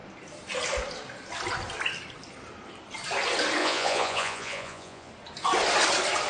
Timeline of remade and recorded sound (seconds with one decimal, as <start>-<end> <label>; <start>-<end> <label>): 0.0-3.6 recorded; 3.6-5.1 remade; 5.1-6.3 recorded